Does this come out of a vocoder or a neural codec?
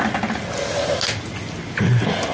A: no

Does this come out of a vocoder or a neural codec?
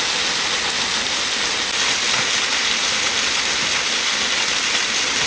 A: no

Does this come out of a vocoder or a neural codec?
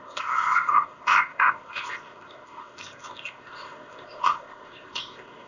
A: yes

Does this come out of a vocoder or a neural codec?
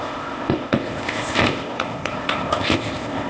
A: yes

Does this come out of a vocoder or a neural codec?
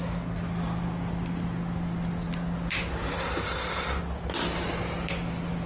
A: no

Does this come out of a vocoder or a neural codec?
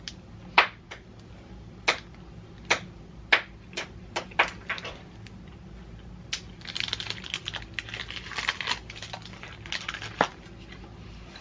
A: no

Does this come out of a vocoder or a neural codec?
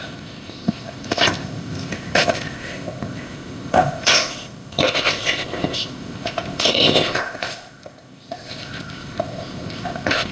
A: yes